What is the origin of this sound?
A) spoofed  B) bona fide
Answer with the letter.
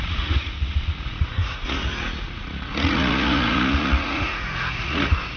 A